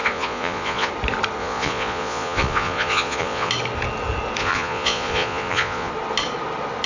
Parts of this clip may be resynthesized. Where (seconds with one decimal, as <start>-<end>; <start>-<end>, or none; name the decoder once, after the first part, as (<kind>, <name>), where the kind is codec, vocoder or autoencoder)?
0.0-0.9 (vocoder, Vocos); 1.4-3.5; 4.4-5.9